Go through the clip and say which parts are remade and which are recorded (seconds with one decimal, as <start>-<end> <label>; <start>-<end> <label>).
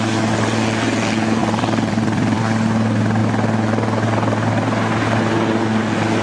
0.0-1.4 recorded; 1.4-2.4 remade; 2.4-6.2 recorded